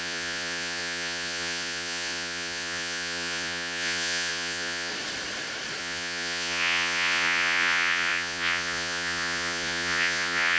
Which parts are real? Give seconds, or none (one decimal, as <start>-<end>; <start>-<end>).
4.9-5.8